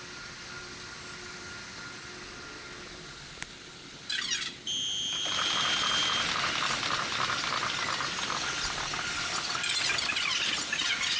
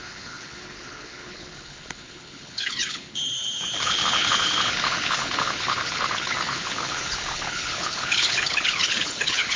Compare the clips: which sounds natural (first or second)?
first